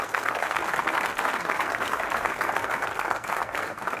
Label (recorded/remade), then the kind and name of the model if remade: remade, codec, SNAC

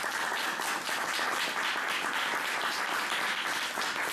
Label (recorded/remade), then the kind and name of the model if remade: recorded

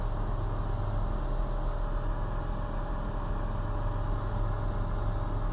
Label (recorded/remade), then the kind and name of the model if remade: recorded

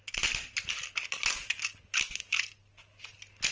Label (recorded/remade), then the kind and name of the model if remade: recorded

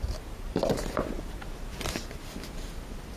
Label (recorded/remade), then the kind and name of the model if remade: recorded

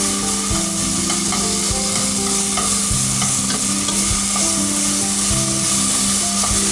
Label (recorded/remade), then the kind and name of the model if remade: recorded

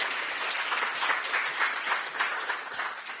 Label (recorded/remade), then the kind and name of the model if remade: recorded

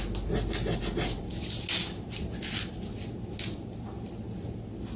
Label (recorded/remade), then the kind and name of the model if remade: recorded